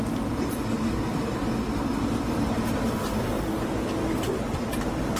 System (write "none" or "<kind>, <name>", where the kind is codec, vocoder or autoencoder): none